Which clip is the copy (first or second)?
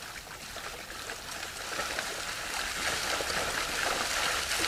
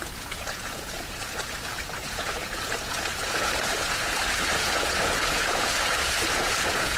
second